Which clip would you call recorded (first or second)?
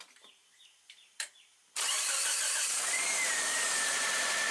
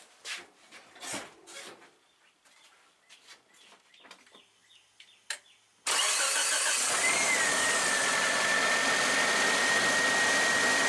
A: second